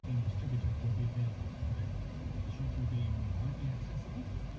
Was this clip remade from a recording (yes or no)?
no